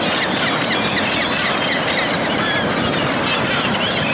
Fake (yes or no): no